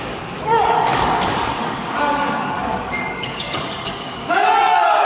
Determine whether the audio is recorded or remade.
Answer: remade